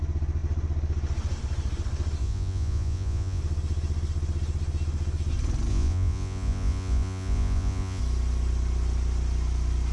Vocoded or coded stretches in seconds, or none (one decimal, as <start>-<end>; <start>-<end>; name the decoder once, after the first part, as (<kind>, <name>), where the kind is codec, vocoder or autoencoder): 2.2-3.4 (vocoder, Vocos); 5.7-8.0

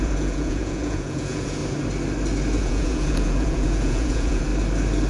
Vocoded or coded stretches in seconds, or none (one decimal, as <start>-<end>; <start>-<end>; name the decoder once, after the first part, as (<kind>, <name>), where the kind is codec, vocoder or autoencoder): 0.0-1.6 (vocoder, Vocos); 2.6-4.5

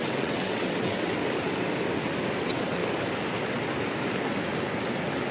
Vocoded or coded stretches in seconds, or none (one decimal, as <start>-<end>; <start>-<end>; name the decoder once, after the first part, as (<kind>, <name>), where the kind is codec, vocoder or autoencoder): 0.0-1.2 (vocoder, WaveNeXt); 2.4-2.8

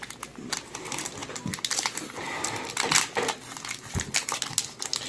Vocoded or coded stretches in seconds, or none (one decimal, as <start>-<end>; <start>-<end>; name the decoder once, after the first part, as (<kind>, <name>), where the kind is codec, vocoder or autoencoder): none

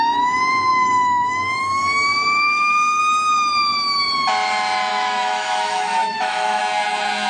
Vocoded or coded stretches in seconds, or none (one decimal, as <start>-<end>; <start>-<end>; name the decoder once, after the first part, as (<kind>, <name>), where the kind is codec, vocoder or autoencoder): 0.7-3.0 (autoencoder, DAC-VAE); 4.9-6.6

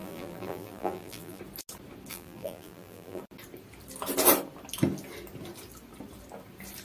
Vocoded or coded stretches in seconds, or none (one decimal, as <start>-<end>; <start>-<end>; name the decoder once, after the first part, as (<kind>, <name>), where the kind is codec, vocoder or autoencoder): 0.0-1.4 (vocoder, BigVGAN v2); 2.1-3.2